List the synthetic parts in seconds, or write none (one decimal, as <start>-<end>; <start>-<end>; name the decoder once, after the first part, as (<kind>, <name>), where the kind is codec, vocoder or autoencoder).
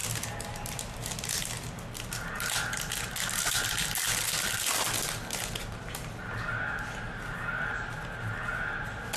none